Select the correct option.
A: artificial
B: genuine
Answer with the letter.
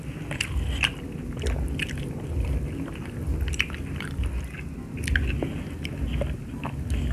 B